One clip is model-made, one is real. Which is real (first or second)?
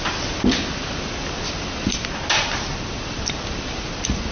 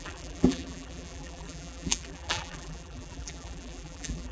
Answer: first